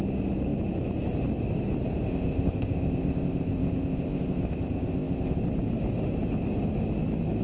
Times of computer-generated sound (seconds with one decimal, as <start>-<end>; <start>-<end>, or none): 2.1-5.4